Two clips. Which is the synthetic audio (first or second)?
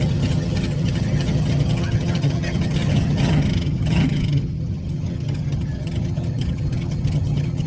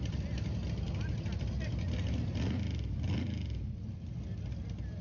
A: first